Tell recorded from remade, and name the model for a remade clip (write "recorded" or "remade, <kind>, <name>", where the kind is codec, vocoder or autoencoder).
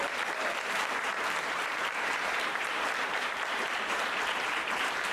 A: remade, vocoder, BigVGAN v2